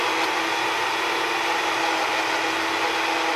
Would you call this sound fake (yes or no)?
no